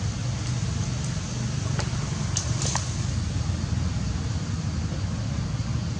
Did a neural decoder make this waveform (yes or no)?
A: no